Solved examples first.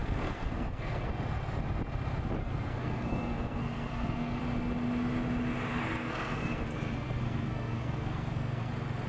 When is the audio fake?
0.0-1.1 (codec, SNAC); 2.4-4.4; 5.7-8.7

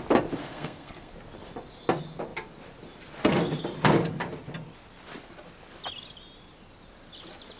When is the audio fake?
0.4-1.1 (codec, SNAC)

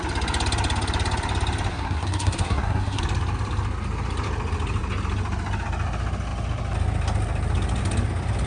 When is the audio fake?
1.7-3.0 (codec, SNAC)